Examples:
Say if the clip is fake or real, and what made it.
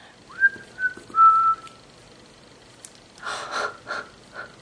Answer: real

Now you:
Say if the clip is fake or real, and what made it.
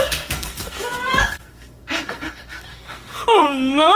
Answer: fake, codec, SNAC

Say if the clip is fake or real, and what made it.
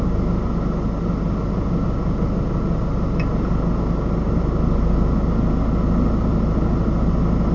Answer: real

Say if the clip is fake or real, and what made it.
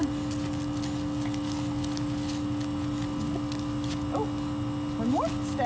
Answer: real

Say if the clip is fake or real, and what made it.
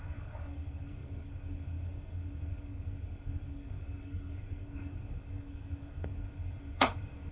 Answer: fake, codec, SNAC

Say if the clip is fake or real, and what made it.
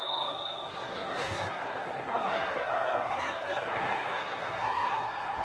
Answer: fake, codec, SNAC